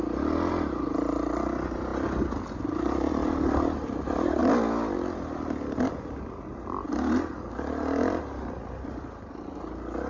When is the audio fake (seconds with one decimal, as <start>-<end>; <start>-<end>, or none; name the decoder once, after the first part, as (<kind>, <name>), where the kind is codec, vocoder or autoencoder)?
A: none